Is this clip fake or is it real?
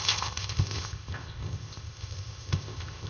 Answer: fake